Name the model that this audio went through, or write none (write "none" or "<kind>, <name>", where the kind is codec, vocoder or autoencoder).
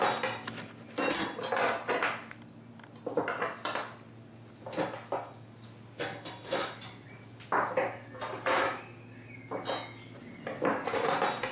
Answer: none